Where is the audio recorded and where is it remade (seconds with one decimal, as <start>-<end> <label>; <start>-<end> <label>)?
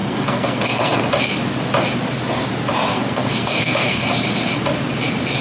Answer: 0.0-1.0 remade; 1.0-2.9 recorded; 2.9-4.1 remade; 4.1-5.4 recorded